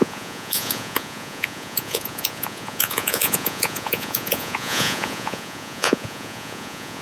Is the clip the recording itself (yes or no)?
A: no